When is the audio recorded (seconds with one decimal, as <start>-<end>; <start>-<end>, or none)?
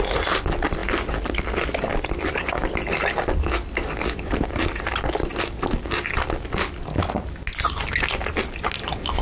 0.0-9.2